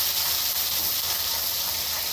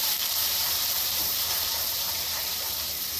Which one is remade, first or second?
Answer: second